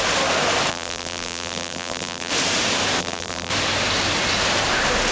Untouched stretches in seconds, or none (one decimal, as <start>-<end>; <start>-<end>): 0.0-0.7; 2.3-3.0; 3.5-5.1